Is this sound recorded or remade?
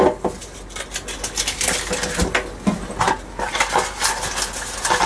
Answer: recorded